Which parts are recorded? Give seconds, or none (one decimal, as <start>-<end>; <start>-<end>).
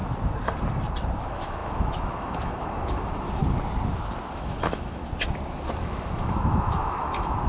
0.0-1.2; 3.4-4.3; 5.0-5.5